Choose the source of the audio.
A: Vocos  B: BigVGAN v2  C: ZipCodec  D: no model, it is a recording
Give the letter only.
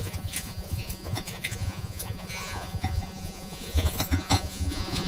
A